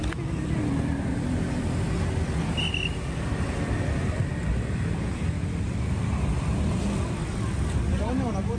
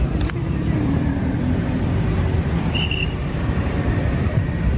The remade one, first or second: second